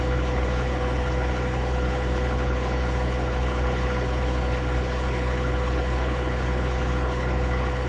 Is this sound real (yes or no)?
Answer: no